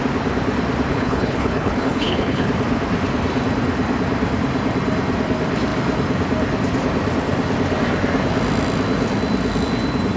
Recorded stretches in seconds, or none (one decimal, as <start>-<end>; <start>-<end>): 0.0-0.9; 2.5-10.2

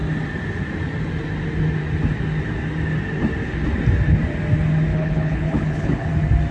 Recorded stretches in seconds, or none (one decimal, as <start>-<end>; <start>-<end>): 0.0-4.9; 6.1-6.5

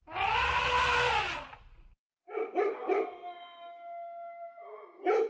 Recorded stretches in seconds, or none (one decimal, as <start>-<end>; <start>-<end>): 0.0-5.3